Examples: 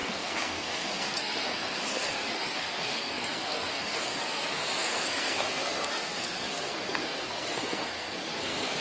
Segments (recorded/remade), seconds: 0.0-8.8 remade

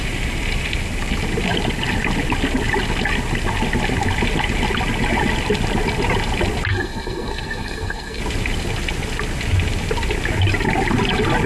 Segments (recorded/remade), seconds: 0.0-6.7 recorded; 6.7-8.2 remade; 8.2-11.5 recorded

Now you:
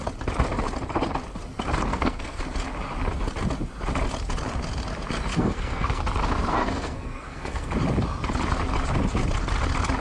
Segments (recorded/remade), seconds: 0.0-1.9 recorded; 1.9-2.4 remade; 2.4-5.3 recorded; 5.3-6.0 remade; 6.0-6.5 recorded; 6.5-7.7 remade; 7.7-10.0 recorded

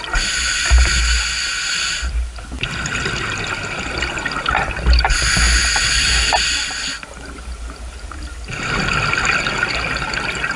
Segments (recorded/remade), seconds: 0.0-10.6 recorded

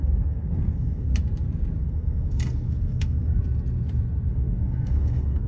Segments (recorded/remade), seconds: 0.0-1.1 remade; 1.1-1.8 recorded; 1.8-3.4 remade; 3.4-4.3 recorded; 4.3-5.5 remade